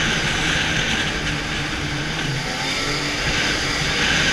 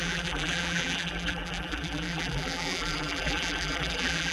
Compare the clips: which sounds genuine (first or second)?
first